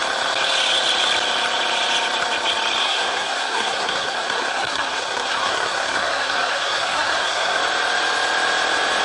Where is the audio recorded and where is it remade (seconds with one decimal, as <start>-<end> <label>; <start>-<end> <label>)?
0.0-2.8 recorded; 2.8-7.6 remade; 7.6-9.0 recorded